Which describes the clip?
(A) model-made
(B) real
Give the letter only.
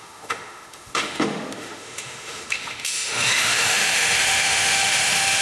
A